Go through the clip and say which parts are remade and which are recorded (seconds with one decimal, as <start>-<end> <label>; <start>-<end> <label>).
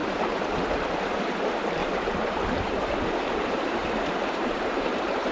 0.0-1.8 recorded; 1.8-5.3 remade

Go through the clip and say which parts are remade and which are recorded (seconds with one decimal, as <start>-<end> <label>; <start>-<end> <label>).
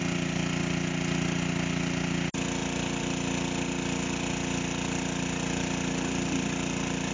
0.0-7.1 recorded